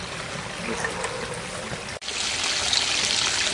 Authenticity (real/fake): real